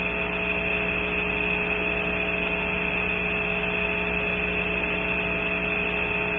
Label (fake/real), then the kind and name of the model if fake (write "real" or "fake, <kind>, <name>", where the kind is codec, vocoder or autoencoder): real